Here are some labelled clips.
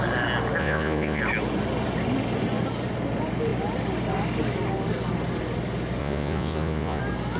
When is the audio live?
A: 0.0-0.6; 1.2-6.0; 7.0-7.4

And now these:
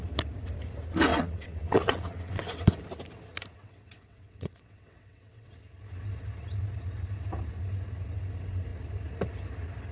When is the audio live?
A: 0.0-1.1; 2.7-3.6; 5.5-9.9